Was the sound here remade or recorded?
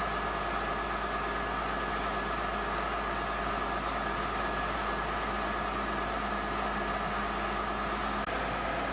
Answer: recorded